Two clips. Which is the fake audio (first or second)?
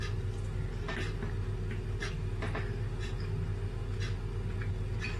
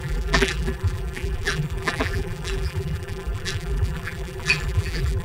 second